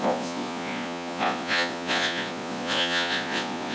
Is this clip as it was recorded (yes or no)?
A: no